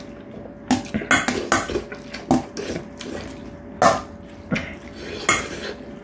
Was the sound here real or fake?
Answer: real